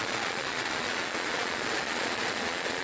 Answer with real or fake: fake